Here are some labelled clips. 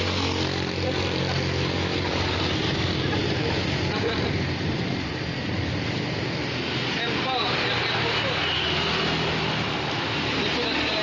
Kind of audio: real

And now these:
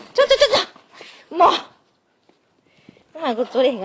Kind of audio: real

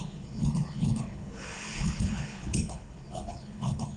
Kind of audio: fake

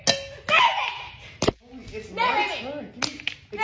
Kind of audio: real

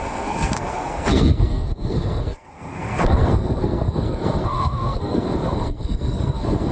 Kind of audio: fake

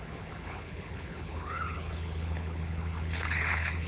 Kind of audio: fake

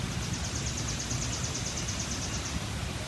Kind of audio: real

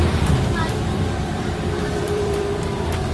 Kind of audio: fake